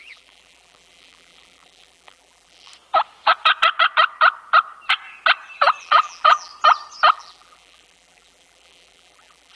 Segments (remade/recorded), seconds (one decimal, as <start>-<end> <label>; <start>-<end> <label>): 0.0-2.7 remade; 2.7-5.8 recorded; 5.8-6.5 remade; 6.5-7.1 recorded; 7.1-9.6 remade

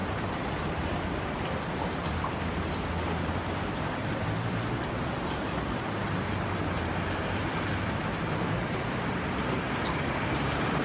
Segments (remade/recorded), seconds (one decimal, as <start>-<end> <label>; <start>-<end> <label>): 0.0-3.8 recorded; 3.8-10.8 remade